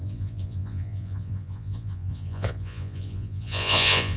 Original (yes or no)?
no